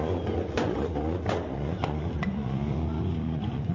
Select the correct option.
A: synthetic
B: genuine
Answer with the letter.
A